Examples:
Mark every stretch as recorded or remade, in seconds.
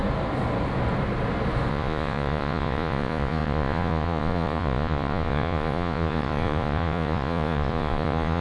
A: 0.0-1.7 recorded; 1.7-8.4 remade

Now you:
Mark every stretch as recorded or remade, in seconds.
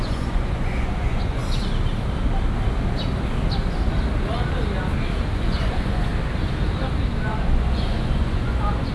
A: 0.0-1.4 remade; 1.4-5.3 recorded; 5.3-6.1 remade; 6.1-7.2 recorded; 7.2-8.9 remade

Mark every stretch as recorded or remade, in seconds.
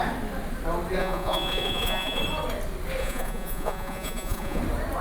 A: 0.0-1.0 recorded; 1.0-2.2 remade; 2.2-3.0 recorded; 3.0-4.6 remade; 4.6-5.0 recorded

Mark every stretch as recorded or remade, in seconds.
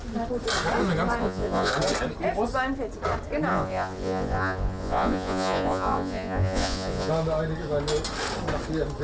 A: 0.0-1.2 recorded; 1.2-1.7 remade; 1.7-3.5 recorded; 3.5-7.1 remade; 7.1-9.0 recorded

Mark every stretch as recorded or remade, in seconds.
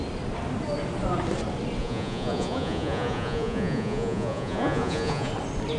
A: 0.0-1.8 recorded; 1.8-5.3 remade; 5.3-5.8 recorded